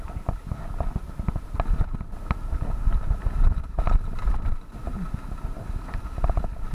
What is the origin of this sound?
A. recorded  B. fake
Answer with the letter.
A